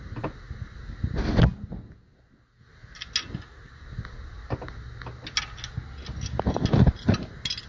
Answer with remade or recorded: recorded